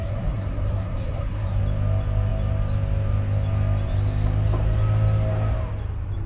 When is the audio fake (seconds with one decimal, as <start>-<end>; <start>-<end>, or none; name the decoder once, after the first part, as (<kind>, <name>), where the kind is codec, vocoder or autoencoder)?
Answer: 0.0-1.6 (codec, SNAC)